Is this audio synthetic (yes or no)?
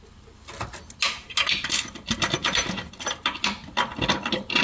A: no